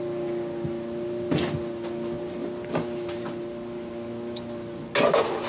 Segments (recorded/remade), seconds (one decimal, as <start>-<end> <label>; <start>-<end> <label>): 0.0-5.5 recorded